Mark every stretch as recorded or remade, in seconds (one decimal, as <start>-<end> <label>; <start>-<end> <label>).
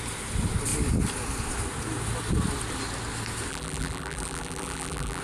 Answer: 0.0-3.5 recorded; 3.5-5.2 remade